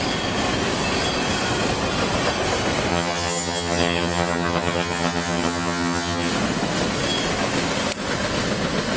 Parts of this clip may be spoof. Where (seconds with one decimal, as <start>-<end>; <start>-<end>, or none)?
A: 2.9-6.3